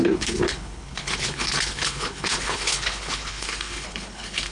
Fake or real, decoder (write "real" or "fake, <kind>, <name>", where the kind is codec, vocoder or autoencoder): fake, codec, HILCodec